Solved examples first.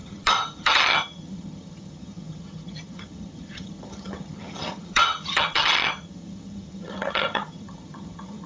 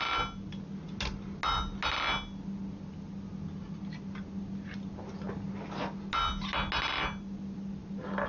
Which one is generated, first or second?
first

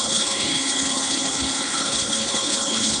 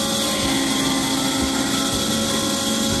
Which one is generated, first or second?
first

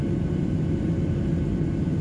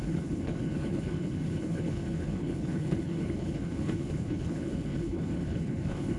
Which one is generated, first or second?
second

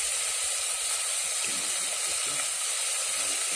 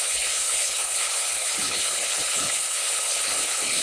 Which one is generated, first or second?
second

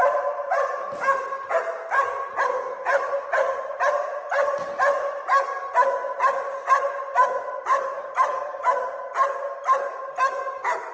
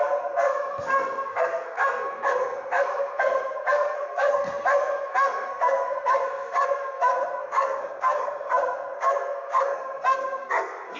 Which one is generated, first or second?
second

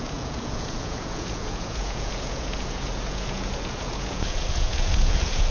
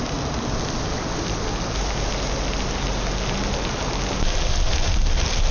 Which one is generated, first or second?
first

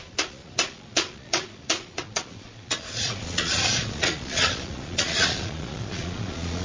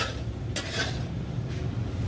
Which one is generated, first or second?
first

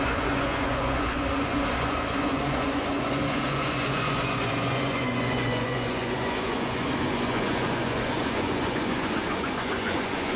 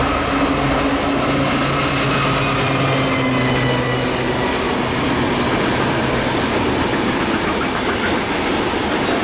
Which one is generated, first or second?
first